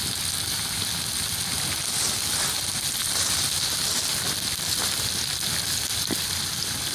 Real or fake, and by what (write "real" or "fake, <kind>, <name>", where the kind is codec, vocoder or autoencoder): real